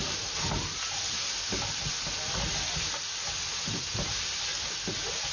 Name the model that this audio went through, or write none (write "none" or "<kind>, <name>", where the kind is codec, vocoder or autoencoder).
none